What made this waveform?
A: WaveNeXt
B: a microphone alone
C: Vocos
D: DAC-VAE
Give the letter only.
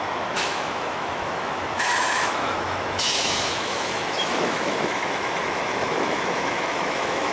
D